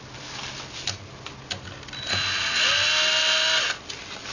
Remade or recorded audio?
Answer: recorded